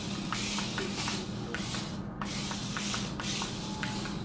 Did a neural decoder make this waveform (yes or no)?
no